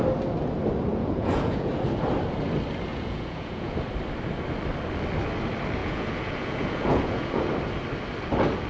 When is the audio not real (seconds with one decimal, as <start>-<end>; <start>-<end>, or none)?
0.9-1.7; 2.9-3.7; 5.8-7.5